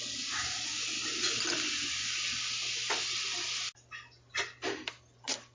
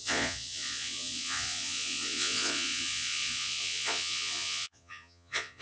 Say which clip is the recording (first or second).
first